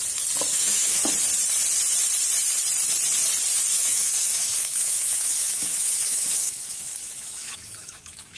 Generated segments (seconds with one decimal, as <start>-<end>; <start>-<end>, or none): 0.5-1.0; 3.7-8.4